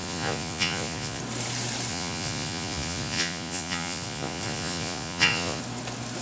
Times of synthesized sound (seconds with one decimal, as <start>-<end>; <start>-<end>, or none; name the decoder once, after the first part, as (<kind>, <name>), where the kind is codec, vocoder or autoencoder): 0.0-1.2 (vocoder, Vocos); 1.9-5.6